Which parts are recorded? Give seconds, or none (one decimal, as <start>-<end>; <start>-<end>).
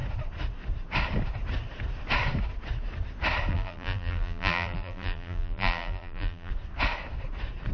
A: 0.0-3.5; 6.5-7.7